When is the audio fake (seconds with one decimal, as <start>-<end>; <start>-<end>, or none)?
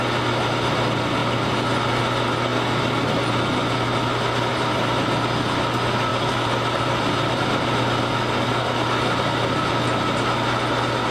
4.5-5.1; 6.1-7.5